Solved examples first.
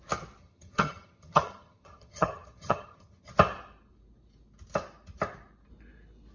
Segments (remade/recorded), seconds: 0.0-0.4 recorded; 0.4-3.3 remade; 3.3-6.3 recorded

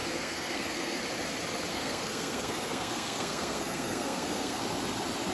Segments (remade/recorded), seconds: 0.0-1.0 remade; 1.0-1.7 recorded; 1.7-4.6 remade; 4.6-5.3 recorded

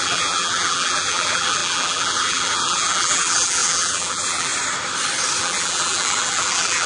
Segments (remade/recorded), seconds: 0.0-4.5 remade; 4.5-5.4 recorded; 5.4-6.9 remade

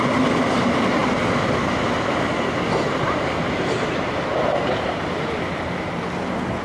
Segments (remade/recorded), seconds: 0.0-6.6 recorded

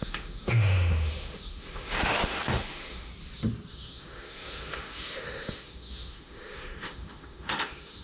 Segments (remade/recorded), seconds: 0.0-3.1 remade; 3.1-3.7 recorded; 3.7-8.0 remade